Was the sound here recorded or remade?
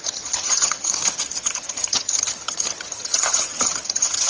remade